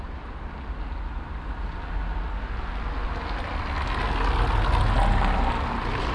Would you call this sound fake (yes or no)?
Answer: no